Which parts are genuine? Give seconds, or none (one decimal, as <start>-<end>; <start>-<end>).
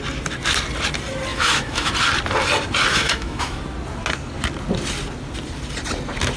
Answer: 0.0-1.3; 1.9-2.9; 3.6-6.4